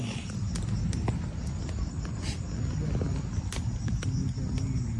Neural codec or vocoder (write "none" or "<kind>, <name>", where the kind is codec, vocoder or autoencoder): none